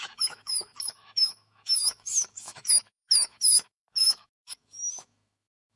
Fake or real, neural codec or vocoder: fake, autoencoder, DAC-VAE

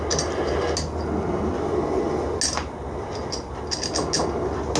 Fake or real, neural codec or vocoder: real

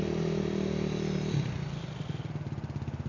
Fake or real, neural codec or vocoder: real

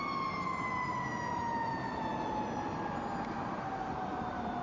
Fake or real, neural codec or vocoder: real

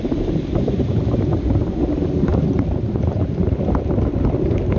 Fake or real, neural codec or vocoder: fake, vocoder, BigVGAN v2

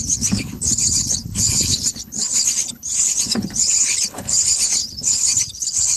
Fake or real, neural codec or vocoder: fake, codec, HILCodec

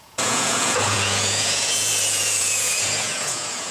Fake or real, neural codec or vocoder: fake, vocoder, Vocos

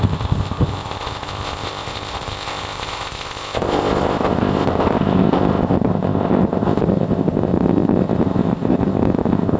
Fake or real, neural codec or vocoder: fake, codec, ZipCodec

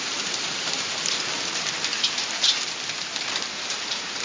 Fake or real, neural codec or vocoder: fake, vocoder, BigVGAN v2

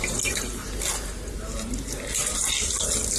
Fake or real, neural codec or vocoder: real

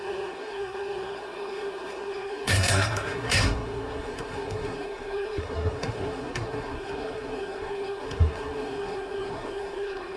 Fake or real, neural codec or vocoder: fake, codec, SNAC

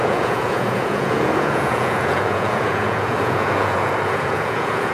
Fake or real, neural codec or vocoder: fake, vocoder, Vocos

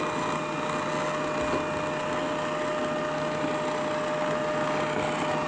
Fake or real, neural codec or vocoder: real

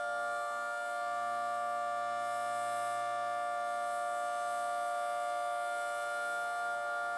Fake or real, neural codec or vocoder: real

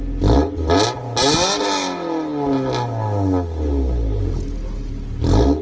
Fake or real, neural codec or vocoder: real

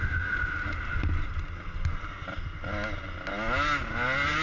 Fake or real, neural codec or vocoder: real